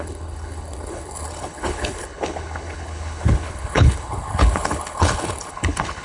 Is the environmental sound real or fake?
fake